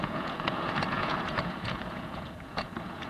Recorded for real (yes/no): no